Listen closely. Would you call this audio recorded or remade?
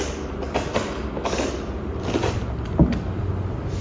recorded